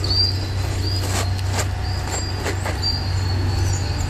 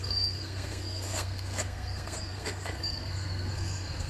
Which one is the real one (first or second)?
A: first